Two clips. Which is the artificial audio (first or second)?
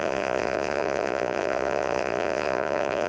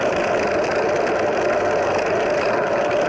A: first